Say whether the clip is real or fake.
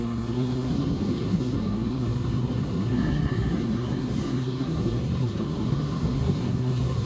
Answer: fake